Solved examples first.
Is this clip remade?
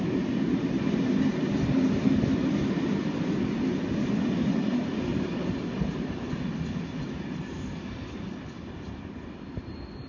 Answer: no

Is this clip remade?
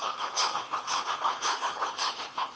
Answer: yes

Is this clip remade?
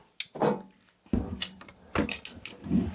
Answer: no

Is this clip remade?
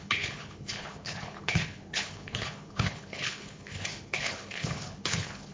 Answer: yes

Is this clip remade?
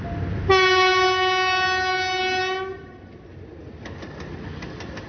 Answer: no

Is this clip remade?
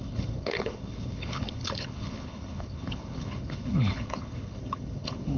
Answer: yes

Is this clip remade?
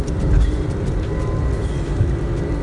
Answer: no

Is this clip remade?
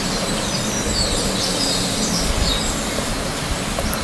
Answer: no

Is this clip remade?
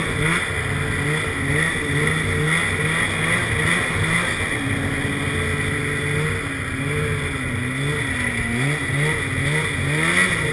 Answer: no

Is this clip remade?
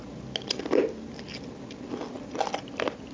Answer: no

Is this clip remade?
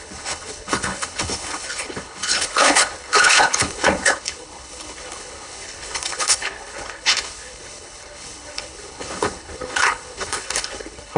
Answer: yes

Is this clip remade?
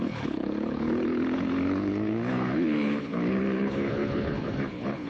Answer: yes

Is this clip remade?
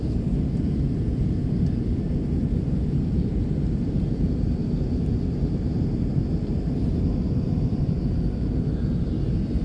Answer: no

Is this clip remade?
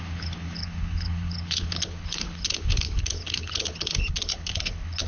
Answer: yes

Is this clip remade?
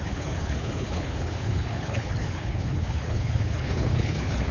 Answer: yes